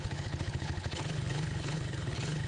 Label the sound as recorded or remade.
remade